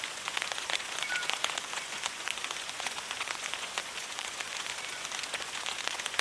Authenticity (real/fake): fake